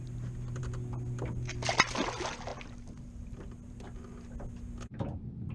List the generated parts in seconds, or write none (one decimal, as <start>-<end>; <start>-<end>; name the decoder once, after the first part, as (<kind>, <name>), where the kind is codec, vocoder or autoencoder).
none